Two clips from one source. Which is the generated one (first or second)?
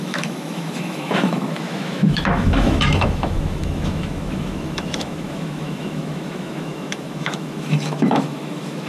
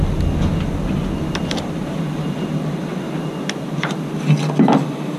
first